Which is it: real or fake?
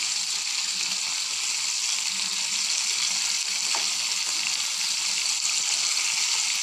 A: real